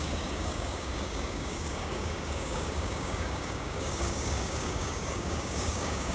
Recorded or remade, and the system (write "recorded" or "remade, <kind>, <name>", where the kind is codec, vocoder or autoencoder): remade, codec, DAC